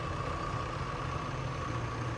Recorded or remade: recorded